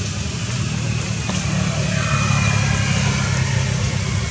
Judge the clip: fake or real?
real